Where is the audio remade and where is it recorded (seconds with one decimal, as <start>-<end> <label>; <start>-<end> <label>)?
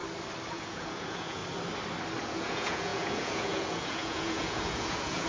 0.0-0.5 recorded; 0.5-1.4 remade; 1.4-2.2 recorded; 2.2-5.3 remade